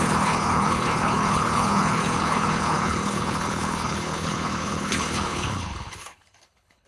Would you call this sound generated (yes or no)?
yes